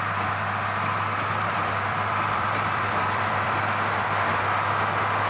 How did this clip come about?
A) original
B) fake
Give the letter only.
B